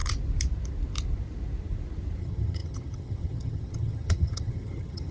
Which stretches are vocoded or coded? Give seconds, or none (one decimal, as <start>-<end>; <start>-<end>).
2.2-5.1